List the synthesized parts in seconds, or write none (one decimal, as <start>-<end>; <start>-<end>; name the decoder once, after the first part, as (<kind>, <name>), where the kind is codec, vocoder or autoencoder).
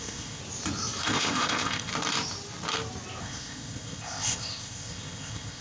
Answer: 0.0-0.4 (codec, ZipCodec); 1.0-1.9; 3.2-5.6